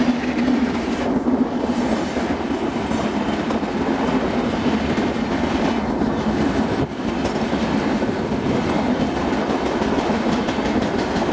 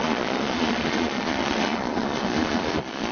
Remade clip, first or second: second